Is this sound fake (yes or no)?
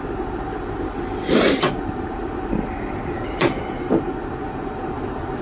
no